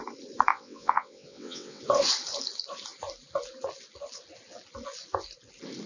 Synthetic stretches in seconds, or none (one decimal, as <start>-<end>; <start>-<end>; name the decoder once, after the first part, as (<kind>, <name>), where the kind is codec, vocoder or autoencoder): 0.5-1.8 (vocoder, WaveNeXt)